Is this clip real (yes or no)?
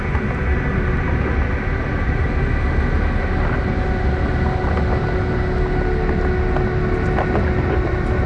yes